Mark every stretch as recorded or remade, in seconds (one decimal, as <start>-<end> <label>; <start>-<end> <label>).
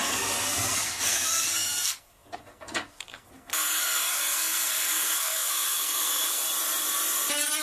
0.0-6.4 remade; 6.4-7.6 recorded